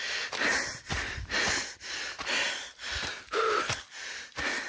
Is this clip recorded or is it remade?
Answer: recorded